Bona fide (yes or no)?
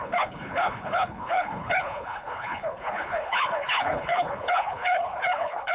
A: no